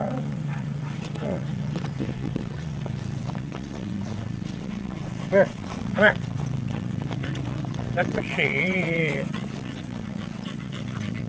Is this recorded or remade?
remade